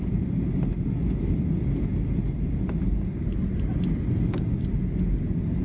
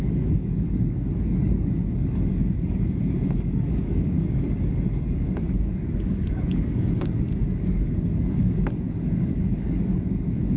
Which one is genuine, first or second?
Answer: first